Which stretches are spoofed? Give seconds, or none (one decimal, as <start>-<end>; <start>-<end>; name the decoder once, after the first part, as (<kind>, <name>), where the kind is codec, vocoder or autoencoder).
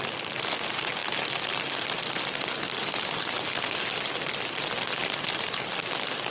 none